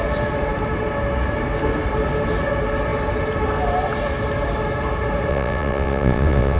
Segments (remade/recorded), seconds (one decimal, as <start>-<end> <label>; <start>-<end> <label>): 0.0-5.3 recorded; 5.3-6.6 remade